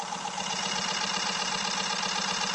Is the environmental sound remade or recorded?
recorded